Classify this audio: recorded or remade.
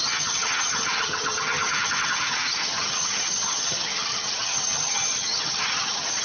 remade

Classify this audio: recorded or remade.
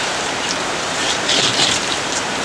remade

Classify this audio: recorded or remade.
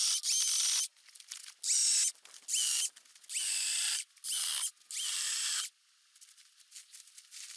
recorded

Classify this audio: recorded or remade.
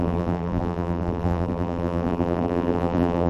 remade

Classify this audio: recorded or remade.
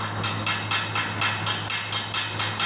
recorded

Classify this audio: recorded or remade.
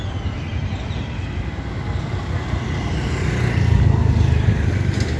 recorded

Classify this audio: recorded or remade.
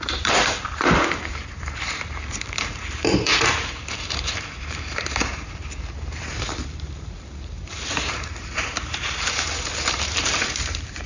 remade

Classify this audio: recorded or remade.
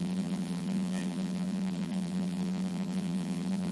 remade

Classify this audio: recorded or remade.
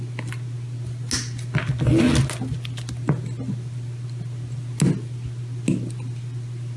recorded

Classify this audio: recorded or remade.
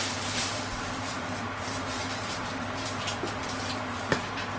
remade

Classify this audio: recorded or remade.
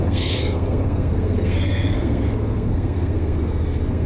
remade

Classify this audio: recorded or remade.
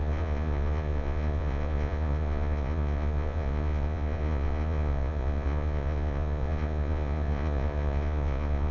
remade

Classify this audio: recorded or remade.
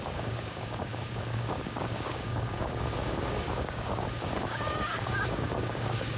remade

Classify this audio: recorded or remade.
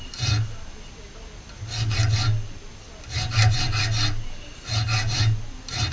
recorded